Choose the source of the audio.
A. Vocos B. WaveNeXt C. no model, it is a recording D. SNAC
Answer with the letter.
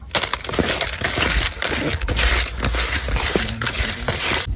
C